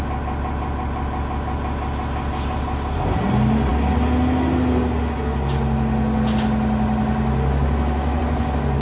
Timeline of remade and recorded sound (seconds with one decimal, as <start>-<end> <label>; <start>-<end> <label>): 0.0-8.8 recorded